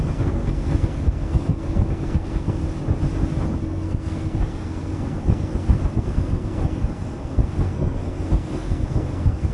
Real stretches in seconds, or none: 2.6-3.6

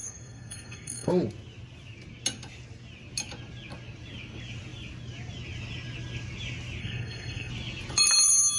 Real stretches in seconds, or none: 1.1-6.8; 7.5-8.6